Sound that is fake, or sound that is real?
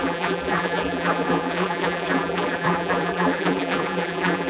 fake